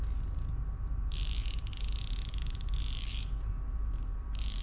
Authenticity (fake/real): fake